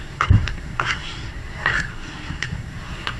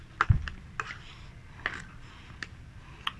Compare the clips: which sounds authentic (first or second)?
second